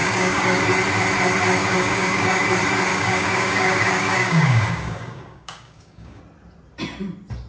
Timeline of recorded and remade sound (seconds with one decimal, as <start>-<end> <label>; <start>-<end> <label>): 0.0-0.6 remade; 0.6-1.6 recorded; 1.6-2.5 remade; 2.5-2.9 recorded; 2.9-6.2 remade; 6.2-7.5 recorded